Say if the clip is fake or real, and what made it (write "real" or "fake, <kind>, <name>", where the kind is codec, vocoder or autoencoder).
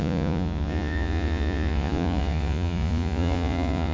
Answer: fake, vocoder, Vocos